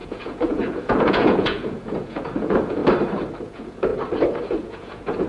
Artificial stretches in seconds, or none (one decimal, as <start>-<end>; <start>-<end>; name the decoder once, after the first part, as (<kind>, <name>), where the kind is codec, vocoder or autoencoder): 0.0-2.8 (vocoder, Vocos); 3.4-3.9; 4.5-5.3